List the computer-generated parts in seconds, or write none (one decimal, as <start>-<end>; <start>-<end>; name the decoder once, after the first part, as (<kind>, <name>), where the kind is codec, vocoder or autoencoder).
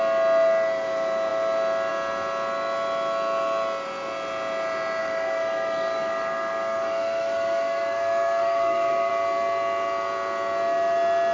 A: 5.0-9.1 (codec, DAC)